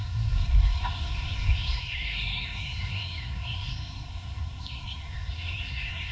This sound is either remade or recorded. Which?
remade